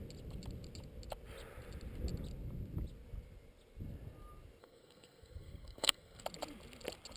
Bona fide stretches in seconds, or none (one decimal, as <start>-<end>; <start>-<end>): 0.0-4.6; 6.2-7.2